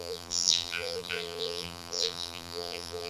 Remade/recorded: remade